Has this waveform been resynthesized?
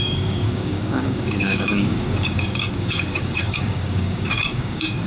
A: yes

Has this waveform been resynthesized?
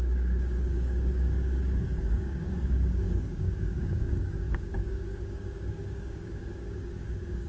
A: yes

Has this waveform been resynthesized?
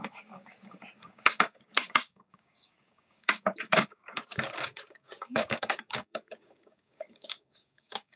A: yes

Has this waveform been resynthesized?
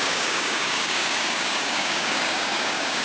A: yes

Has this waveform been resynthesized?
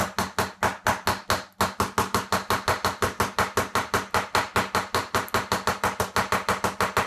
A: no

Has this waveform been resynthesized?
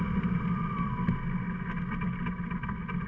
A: no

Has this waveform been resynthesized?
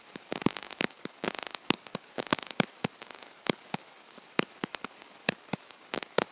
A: yes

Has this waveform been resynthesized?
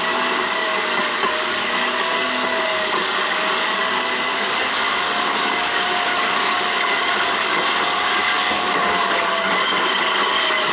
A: yes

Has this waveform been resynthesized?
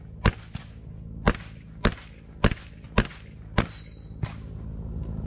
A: no